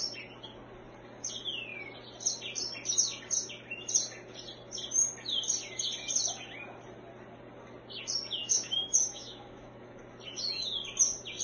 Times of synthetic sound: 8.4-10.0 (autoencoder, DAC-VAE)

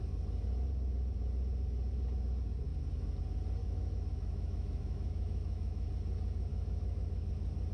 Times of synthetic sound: 3.6-5.9 (autoencoder, DAC-VAE); 6.5-7.3

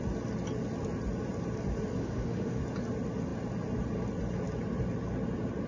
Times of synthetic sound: 2.0-2.6 (autoencoder, DAC-VAE)

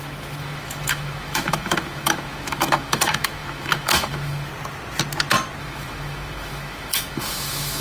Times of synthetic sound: 0.0-4.5 (autoencoder, DAC-VAE); 5.6-7.8

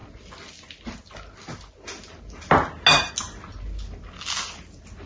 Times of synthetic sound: none

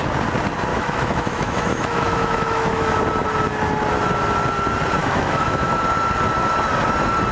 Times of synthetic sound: 0.7-3.0 (autoencoder, DAC-VAE); 5.0-5.8